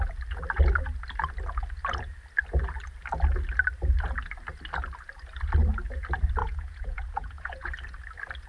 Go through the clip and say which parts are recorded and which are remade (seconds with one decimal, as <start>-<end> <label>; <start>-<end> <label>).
0.0-6.4 recorded; 6.4-7.7 remade; 7.7-8.5 recorded